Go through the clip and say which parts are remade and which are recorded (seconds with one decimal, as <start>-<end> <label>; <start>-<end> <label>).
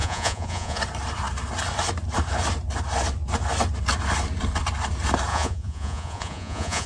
0.0-0.8 remade; 0.8-5.3 recorded; 5.3-6.9 remade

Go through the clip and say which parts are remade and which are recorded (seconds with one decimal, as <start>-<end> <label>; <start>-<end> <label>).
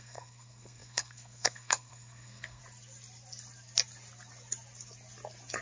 0.0-2.6 remade; 2.6-5.6 recorded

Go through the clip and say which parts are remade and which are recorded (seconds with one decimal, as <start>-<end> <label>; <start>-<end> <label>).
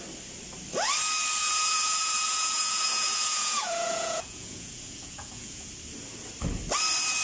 0.0-1.4 recorded; 1.4-5.7 remade; 5.7-7.2 recorded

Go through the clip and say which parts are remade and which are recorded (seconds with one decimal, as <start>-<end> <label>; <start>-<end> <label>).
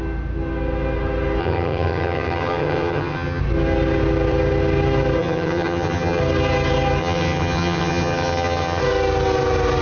0.0-1.4 recorded; 1.4-3.4 remade; 3.4-5.2 recorded; 5.2-6.2 remade; 6.2-7.0 recorded; 7.0-8.8 remade; 8.8-9.8 recorded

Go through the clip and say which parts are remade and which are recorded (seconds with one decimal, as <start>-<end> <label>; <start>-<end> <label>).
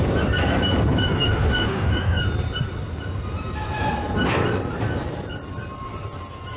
0.0-1.0 recorded; 1.0-2.2 remade; 2.2-6.6 recorded